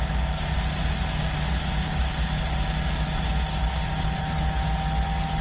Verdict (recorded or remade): recorded